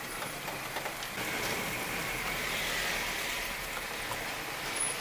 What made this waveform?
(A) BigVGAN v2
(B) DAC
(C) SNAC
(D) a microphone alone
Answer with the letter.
A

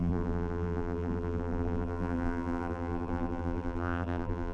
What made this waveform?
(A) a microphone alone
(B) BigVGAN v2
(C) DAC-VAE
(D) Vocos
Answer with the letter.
B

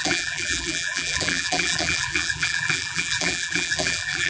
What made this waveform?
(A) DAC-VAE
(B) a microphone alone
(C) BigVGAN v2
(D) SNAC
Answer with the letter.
C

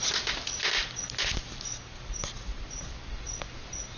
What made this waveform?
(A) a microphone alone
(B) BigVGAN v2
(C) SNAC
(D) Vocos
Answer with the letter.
A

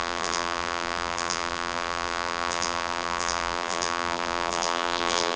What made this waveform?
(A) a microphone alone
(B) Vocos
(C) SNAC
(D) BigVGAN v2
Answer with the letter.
D